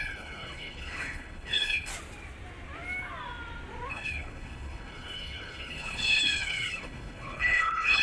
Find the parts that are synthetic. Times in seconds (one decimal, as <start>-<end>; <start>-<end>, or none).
0.0-1.9; 3.9-8.0